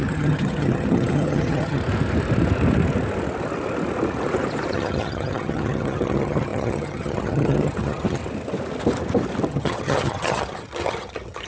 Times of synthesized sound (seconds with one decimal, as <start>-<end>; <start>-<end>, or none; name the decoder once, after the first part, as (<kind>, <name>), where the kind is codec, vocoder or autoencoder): 0.0-1.8 (vocoder, HiFi-GAN); 4.7-8.2; 9.5-11.5